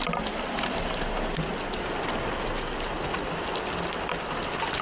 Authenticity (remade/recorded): recorded